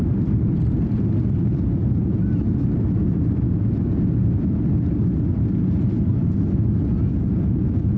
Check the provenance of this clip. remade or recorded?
recorded